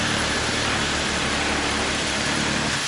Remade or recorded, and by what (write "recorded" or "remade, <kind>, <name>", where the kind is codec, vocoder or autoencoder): remade, vocoder, BigVGAN v2